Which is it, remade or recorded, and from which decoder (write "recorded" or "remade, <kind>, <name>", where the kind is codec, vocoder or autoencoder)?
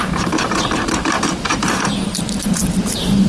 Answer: remade, vocoder, BigVGAN v2